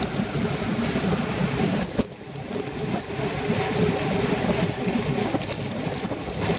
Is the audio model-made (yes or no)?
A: no